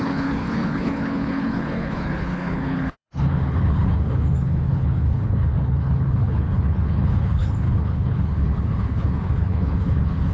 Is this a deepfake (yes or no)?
yes